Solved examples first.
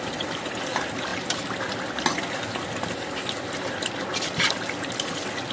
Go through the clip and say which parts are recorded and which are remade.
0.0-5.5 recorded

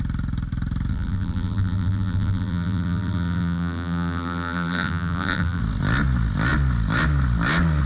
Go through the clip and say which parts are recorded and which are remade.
0.0-0.9 recorded; 0.9-5.6 remade; 5.6-7.9 recorded